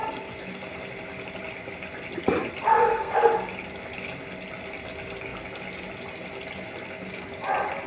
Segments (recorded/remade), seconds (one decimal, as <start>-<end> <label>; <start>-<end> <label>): 0.0-2.7 recorded; 2.7-3.3 remade; 3.3-7.9 recorded